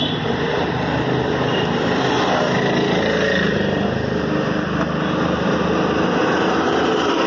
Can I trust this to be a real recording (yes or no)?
yes